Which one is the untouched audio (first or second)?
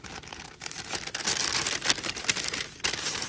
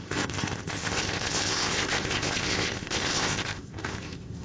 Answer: first